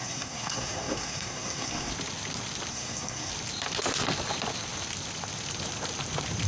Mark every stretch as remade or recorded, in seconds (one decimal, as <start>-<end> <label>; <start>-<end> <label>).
0.0-1.9 remade; 1.9-2.7 recorded; 2.7-3.3 remade; 3.3-6.5 recorded